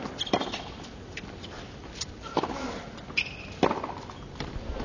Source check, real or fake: real